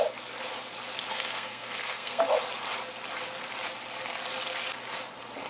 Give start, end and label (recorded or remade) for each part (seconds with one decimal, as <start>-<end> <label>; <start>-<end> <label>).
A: 0.0-1.1 recorded; 1.1-2.2 remade; 2.2-5.5 recorded